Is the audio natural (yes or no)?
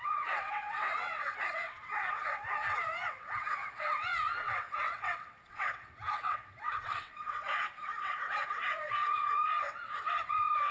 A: no